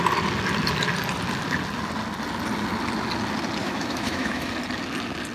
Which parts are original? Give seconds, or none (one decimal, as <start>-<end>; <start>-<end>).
0.0-3.6; 4.5-5.3